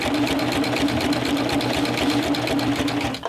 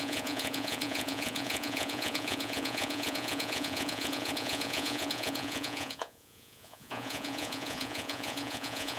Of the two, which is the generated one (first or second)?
second